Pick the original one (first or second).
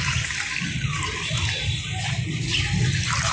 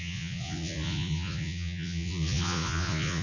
first